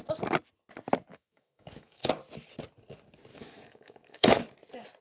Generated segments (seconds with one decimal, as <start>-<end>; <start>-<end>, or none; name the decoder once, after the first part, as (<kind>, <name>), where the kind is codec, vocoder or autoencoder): 1.1-2.1 (autoencoder, DAC-VAE); 3.3-4.4